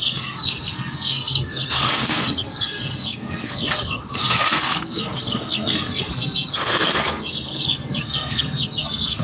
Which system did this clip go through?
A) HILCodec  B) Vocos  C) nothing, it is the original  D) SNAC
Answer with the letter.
D